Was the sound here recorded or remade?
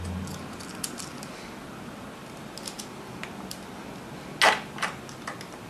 recorded